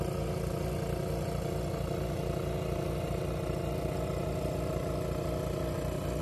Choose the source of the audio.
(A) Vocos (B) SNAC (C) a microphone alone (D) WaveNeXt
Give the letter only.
C